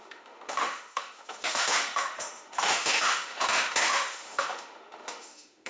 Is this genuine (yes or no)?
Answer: no